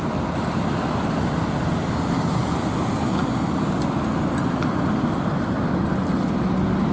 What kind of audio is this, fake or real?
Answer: real